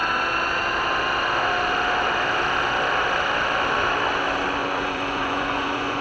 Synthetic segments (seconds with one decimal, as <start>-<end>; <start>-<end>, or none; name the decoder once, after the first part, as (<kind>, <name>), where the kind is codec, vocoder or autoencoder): 4.6-6.0 (vocoder, Vocos)